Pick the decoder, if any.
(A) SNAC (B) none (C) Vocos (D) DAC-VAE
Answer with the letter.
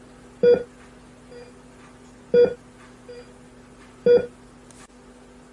B